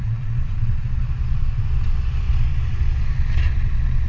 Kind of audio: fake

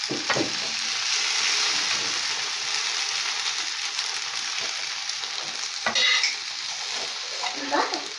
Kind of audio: real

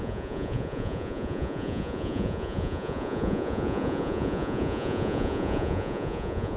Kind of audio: fake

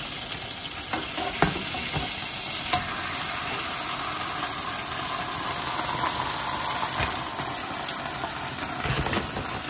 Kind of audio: real